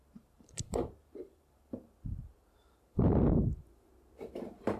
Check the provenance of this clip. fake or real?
fake